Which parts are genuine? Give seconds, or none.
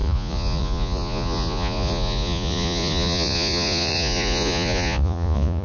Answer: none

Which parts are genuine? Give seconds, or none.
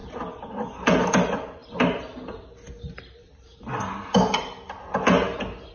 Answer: 0.0-5.7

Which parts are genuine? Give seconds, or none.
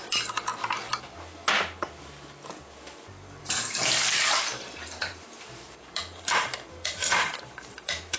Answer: 0.5-3.4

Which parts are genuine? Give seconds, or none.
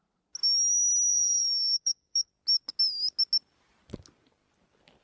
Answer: 0.0-1.1; 2.3-5.0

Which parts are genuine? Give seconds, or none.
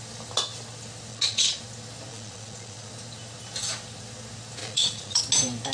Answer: 0.0-1.1; 1.6-2.1; 2.9-4.6; 5.2-5.7